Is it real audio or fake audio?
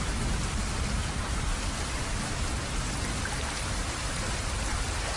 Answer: real